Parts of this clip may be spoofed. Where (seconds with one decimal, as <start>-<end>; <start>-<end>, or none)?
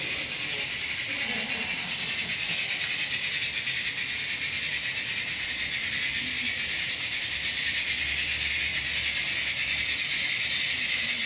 none